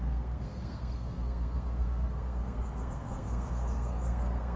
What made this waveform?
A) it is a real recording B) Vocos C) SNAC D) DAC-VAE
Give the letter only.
C